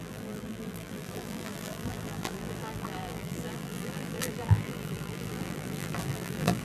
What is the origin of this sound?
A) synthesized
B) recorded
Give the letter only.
A